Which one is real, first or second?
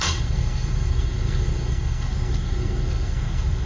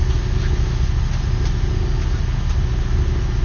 second